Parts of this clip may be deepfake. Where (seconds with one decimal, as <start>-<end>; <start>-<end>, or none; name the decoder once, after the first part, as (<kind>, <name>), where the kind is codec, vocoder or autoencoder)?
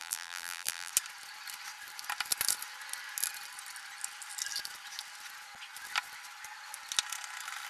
0.0-0.9 (vocoder, BigVGAN v2)